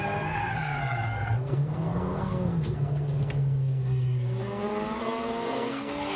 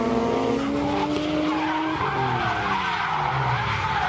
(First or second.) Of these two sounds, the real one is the second